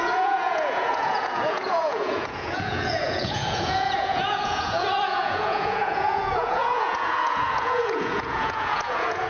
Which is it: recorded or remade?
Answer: remade